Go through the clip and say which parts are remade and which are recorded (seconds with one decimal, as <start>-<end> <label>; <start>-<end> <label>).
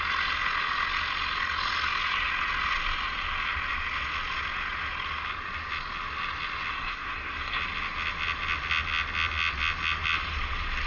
0.0-6.7 recorded; 6.7-7.6 remade; 7.6-10.9 recorded